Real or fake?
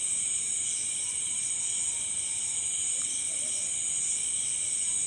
real